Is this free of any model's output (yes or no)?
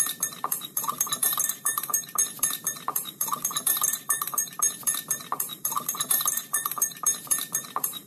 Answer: no